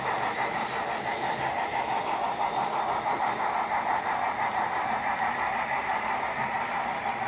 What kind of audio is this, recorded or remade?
recorded